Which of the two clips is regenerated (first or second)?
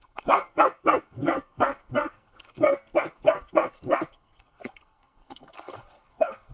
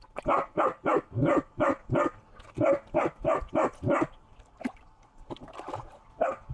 first